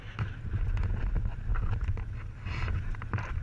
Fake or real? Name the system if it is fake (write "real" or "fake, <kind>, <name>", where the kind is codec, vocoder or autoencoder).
real